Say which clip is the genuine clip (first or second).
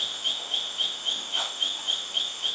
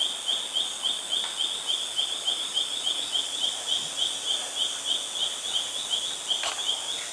second